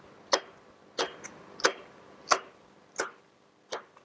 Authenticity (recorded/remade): recorded